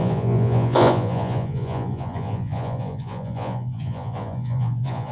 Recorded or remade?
remade